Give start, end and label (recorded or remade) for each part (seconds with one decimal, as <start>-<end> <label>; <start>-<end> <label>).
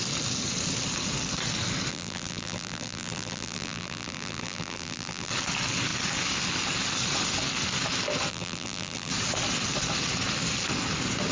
0.0-1.9 recorded; 1.9-5.3 remade; 5.3-8.3 recorded; 8.3-9.1 remade; 9.1-11.3 recorded